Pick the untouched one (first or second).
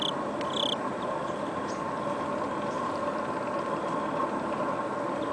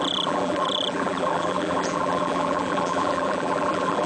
first